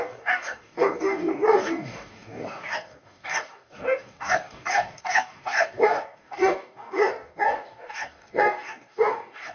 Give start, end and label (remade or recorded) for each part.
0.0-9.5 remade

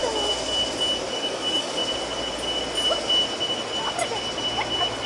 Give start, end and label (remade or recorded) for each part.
0.0-1.1 recorded; 1.1-1.8 remade; 1.8-5.1 recorded